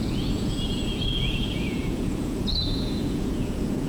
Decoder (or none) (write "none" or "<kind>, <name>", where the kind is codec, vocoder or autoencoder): vocoder, Vocos